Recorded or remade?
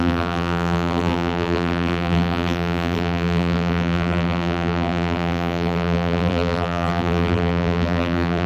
remade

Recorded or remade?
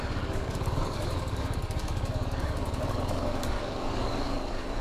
remade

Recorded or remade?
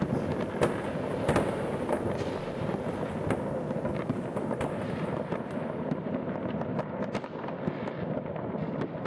recorded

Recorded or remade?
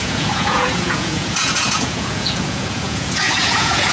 remade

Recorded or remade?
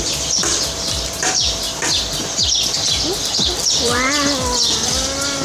remade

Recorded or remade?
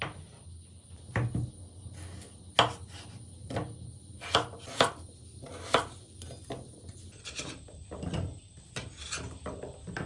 recorded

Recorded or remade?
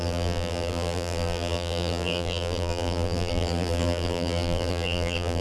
remade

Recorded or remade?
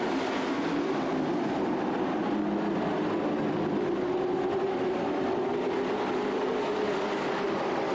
recorded